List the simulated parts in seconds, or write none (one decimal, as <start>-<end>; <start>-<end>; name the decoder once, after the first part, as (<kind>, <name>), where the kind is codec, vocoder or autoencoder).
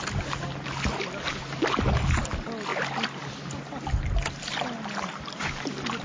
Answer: none